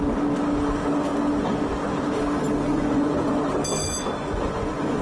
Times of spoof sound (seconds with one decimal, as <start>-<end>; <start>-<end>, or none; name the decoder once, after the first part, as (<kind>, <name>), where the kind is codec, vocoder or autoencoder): 2.7-3.3 (vocoder, Vocos); 4.2-5.0